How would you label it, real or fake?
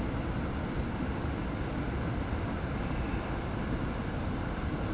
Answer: real